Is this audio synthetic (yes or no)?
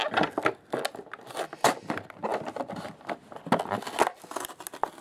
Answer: no